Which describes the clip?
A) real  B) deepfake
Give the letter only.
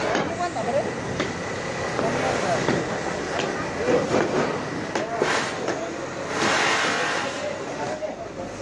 A